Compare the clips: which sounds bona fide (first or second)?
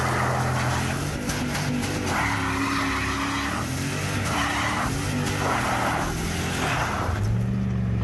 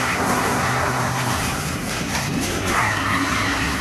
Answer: first